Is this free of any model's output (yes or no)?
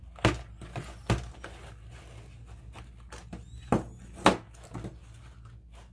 yes